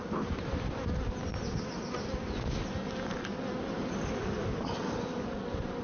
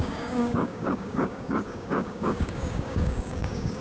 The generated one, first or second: second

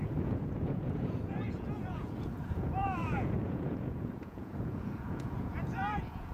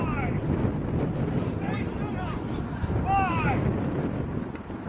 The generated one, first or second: first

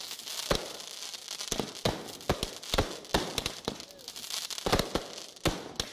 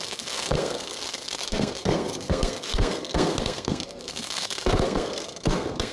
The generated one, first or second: second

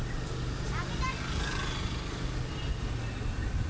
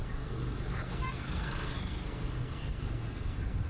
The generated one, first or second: second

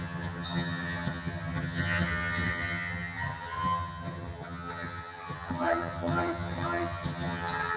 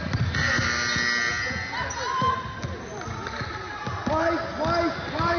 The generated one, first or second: first